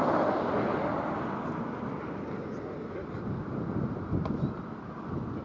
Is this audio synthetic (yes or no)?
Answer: no